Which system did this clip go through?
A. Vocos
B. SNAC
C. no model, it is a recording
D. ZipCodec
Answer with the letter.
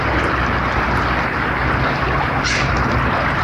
C